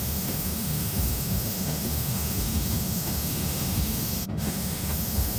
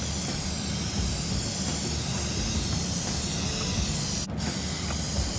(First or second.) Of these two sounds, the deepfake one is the first